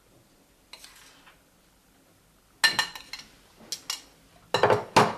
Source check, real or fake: real